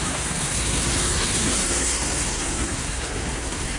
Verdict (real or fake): fake